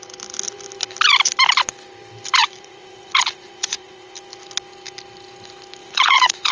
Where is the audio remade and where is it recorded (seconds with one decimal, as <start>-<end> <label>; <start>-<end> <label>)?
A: 0.0-2.4 recorded; 2.4-4.1 remade; 4.1-5.8 recorded; 5.8-6.5 remade